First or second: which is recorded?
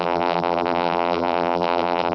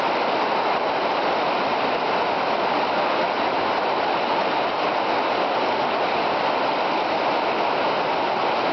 second